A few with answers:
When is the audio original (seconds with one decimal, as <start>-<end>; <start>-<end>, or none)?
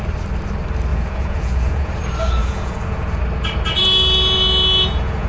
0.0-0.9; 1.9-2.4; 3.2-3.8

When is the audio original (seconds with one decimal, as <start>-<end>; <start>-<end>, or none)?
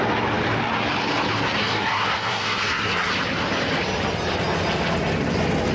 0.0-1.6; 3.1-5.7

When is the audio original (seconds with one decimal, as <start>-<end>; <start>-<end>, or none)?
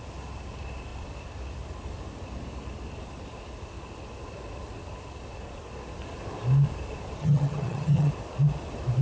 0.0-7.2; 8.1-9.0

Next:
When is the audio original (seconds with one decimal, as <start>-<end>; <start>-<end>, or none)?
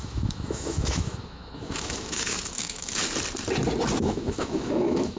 3.0-4.0